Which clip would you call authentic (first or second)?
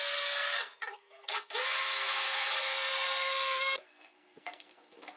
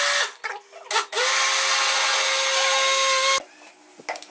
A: second